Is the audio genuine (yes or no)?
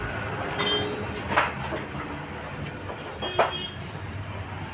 yes